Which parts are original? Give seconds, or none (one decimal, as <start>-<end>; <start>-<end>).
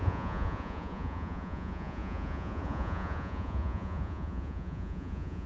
none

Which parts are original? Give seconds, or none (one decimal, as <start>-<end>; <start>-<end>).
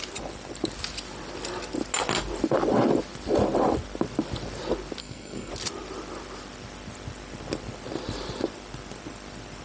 0.0-5.0; 5.5-9.6